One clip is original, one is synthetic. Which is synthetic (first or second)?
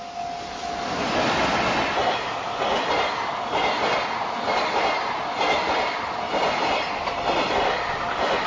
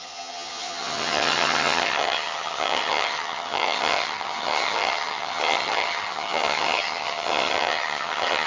second